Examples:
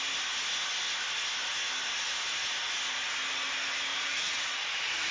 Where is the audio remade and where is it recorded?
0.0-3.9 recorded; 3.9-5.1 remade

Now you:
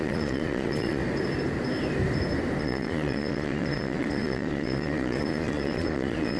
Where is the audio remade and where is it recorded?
0.0-1.0 remade; 1.0-2.6 recorded; 2.6-6.4 remade